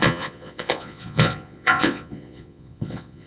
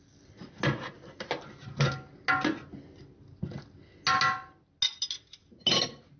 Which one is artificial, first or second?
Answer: first